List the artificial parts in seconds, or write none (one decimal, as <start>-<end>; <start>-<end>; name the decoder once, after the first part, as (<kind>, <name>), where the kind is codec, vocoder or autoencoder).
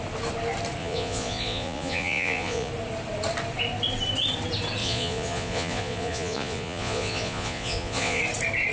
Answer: 0.8-2.7 (vocoder, Vocos); 4.8-8.2